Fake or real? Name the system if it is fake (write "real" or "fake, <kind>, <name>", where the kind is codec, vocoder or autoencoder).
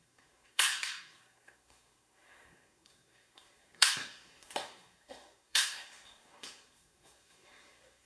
fake, codec, SNAC